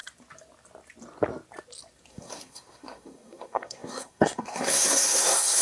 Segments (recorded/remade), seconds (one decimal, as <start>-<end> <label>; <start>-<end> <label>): 0.0-2.1 recorded; 2.1-5.6 remade